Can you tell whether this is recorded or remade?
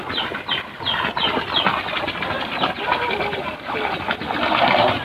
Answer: remade